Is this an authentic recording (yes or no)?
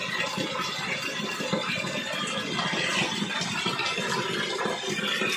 yes